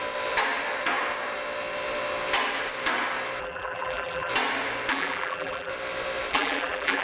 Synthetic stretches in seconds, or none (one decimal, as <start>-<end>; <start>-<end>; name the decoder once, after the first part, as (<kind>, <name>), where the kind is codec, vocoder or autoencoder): 3.4-4.3 (vocoder, BigVGAN v2); 4.9-5.7; 6.3-7.0